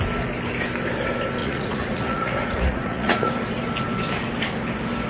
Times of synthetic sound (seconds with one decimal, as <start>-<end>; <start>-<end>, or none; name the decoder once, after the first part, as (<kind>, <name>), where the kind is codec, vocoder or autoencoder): 1.4-3.3 (vocoder, Vocos)